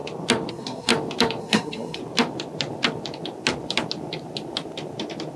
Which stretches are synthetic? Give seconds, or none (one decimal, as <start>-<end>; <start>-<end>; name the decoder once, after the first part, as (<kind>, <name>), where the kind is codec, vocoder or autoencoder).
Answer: 0.5-0.9 (codec, SNAC); 1.4-2.0